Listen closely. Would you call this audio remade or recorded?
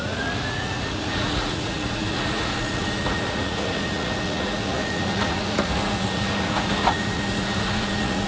remade